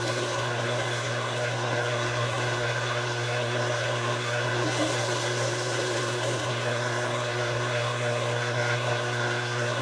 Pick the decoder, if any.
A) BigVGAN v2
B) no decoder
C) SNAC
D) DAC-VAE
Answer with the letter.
C